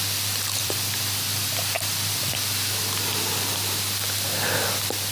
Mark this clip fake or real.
fake